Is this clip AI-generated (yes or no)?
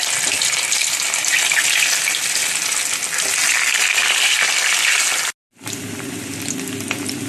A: no